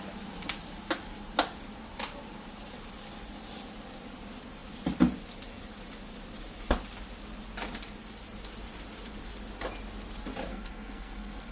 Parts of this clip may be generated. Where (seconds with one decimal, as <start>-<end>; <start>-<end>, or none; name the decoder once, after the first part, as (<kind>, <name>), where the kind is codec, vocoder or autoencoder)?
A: 10.5-11.5 (codec, SNAC)